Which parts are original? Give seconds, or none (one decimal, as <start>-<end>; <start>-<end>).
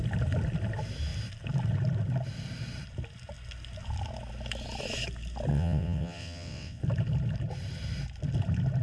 0.0-5.5; 6.8-8.8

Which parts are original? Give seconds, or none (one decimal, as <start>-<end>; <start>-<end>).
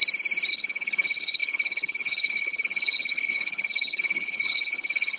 0.0-0.5